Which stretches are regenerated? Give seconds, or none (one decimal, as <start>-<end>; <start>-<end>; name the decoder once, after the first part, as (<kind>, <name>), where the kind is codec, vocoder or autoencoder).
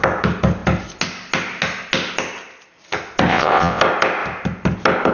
3.3-3.8 (vocoder, WaveNeXt)